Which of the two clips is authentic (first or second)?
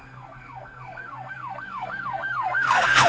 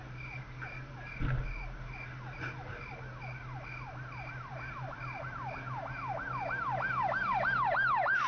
second